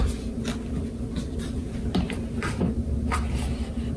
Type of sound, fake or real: real